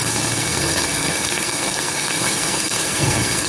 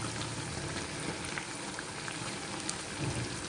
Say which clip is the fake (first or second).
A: first